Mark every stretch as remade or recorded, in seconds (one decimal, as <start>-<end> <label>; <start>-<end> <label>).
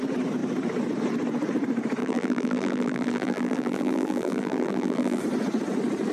0.0-2.0 recorded; 2.0-5.2 remade; 5.2-6.1 recorded